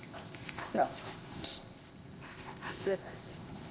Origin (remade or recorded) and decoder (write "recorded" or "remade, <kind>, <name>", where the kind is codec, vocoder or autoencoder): remade, codec, ZipCodec